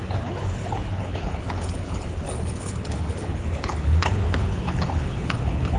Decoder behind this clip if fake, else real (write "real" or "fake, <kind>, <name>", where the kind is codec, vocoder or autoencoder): fake, codec, HILCodec